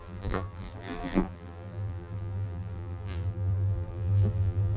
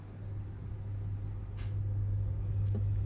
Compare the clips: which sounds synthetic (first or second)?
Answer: first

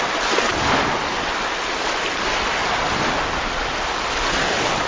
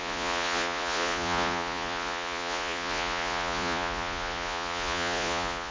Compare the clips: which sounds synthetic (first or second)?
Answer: second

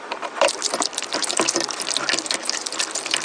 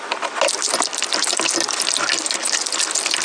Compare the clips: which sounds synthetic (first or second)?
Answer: first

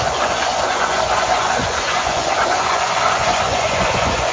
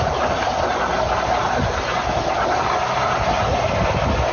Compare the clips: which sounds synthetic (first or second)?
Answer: first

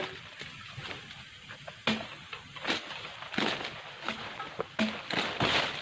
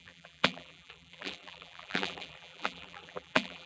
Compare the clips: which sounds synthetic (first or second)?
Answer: second